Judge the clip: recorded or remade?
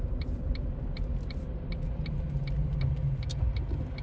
recorded